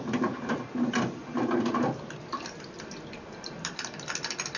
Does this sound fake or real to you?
real